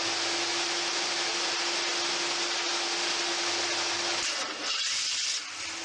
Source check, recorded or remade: recorded